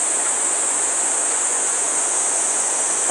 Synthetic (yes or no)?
yes